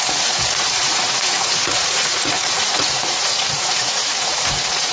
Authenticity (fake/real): fake